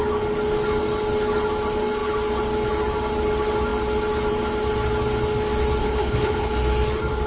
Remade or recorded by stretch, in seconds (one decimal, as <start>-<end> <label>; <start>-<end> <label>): 0.0-5.8 recorded; 5.8-6.5 remade; 6.5-7.3 recorded